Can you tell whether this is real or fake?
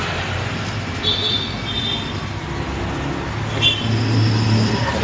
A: real